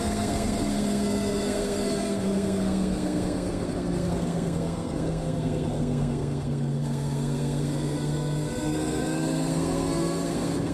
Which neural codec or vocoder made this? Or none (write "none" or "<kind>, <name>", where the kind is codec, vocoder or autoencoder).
codec, SNAC